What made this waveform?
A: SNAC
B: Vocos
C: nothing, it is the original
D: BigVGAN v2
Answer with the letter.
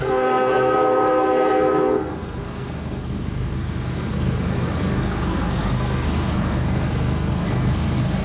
A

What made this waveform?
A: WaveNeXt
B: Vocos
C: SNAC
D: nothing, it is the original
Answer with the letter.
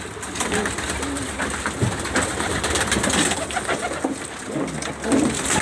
D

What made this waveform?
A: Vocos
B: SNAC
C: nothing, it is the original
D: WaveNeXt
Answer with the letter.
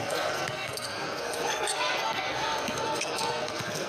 B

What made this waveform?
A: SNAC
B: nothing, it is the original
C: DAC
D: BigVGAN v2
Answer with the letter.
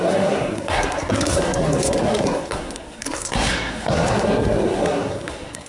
A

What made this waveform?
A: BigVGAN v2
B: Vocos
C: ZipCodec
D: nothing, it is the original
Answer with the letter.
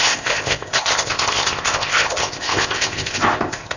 C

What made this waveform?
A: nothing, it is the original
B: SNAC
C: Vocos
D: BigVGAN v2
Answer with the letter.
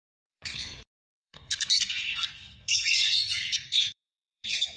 B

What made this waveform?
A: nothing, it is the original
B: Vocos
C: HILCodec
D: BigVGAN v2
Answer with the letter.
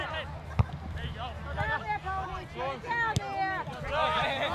A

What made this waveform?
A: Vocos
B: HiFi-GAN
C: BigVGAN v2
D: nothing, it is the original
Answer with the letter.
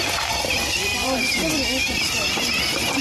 D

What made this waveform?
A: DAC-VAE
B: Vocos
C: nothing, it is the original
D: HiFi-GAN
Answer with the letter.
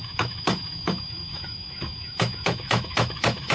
A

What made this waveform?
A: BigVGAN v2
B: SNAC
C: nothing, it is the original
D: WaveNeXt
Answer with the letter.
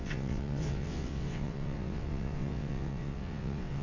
D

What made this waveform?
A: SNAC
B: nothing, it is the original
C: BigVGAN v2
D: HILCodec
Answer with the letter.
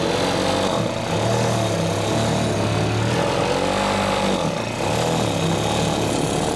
B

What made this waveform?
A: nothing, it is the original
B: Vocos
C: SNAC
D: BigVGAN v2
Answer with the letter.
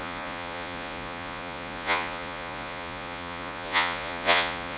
B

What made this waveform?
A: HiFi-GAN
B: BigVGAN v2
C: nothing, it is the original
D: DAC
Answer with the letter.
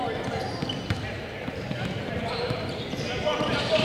B